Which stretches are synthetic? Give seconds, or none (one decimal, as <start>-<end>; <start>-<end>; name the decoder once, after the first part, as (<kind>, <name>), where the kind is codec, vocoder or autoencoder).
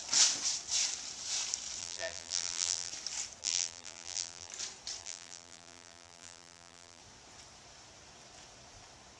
1.8-2.9 (vocoder, BigVGAN v2); 3.4-4.5; 5.0-7.0